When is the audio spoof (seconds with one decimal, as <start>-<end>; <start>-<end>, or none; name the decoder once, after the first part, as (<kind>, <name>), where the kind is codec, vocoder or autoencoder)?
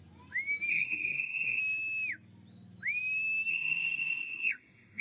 0.7-1.6 (codec, SNAC); 3.5-5.0